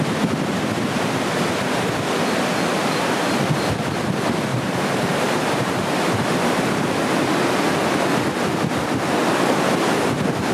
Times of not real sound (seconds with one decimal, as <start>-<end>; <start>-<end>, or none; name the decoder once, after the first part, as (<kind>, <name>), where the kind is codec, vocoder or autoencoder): 4.5-7.0 (vocoder, BigVGAN v2)